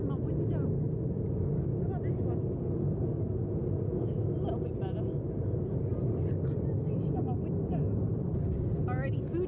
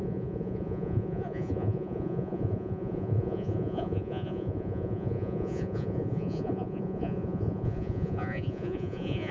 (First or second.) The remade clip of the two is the second